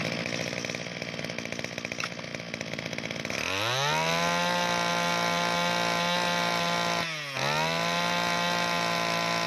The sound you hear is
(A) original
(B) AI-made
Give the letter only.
A